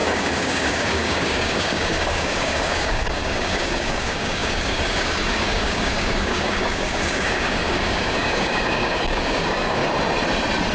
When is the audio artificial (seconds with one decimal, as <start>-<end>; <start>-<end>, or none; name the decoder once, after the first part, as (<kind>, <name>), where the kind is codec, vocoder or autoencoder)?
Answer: 0.0-9.8 (codec, DAC)